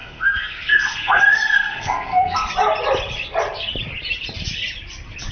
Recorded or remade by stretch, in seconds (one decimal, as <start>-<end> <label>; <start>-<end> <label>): 0.0-2.5 remade; 2.5-5.3 recorded